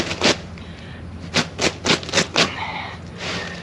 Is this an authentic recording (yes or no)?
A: yes